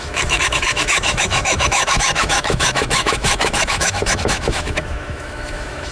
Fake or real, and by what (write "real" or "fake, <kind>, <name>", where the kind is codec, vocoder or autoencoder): fake, autoencoder, DAC-VAE